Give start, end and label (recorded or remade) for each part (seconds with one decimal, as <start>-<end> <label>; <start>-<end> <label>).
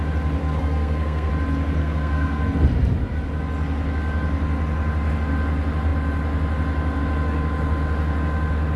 0.0-0.4 recorded; 0.4-1.3 remade; 1.3-1.8 recorded; 1.8-2.4 remade; 2.4-8.8 recorded